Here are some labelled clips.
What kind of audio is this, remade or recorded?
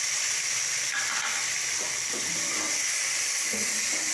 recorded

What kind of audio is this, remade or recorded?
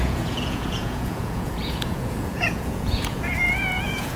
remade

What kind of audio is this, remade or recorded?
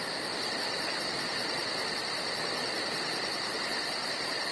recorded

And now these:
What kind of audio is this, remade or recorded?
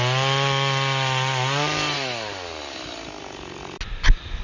recorded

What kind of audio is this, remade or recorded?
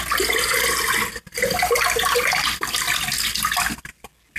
recorded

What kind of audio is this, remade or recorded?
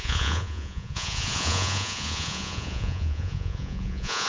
remade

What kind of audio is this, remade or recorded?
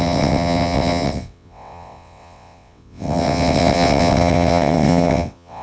remade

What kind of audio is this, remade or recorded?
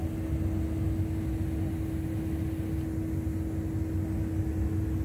recorded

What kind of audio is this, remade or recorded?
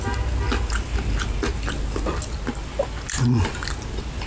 recorded